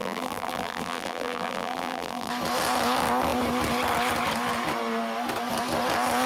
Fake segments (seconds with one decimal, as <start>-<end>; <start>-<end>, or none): 0.0-2.3